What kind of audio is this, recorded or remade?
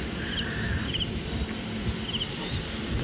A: recorded